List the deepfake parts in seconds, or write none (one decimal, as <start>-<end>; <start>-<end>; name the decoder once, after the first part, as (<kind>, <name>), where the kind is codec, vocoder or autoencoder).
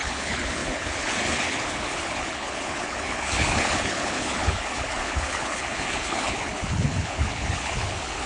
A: 0.0-8.3 (codec, HILCodec)